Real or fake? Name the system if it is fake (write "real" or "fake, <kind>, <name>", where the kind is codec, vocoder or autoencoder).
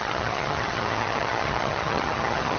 fake, vocoder, HiFi-GAN